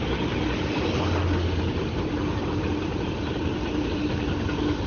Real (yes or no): yes